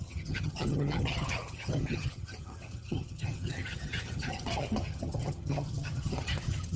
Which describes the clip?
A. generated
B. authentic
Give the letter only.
A